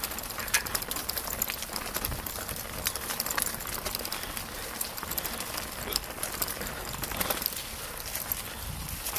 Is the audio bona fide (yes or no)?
yes